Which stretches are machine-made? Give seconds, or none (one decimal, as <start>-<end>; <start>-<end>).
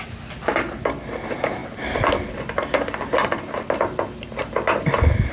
none